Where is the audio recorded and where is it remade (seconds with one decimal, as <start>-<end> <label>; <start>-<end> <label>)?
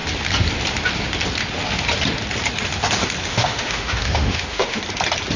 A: 0.0-3.3 recorded; 3.3-4.8 remade; 4.8-5.4 recorded